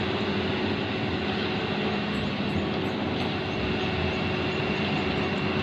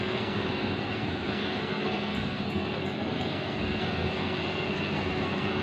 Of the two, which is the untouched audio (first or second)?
first